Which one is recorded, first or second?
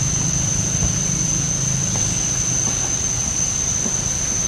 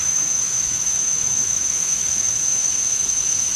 first